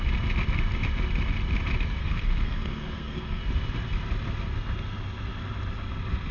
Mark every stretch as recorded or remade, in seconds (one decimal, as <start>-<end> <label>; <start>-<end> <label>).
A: 0.0-2.0 recorded; 2.0-3.4 remade; 3.4-6.3 recorded